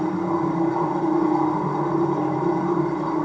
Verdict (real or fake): fake